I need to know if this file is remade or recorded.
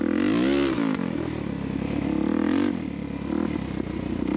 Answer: recorded